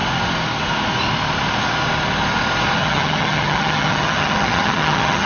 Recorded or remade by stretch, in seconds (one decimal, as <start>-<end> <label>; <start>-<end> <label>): 0.0-2.8 recorded; 2.8-5.3 remade